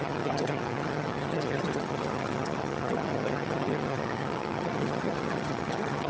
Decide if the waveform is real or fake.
fake